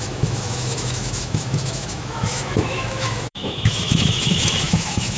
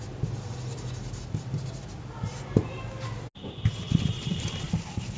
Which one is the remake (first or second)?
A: first